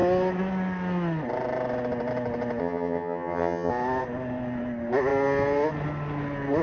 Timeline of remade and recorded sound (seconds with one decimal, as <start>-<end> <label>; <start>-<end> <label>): 0.0-2.6 recorded; 2.6-3.7 remade; 3.7-6.6 recorded